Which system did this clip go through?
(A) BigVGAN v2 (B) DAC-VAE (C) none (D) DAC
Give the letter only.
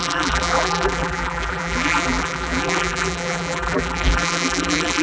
A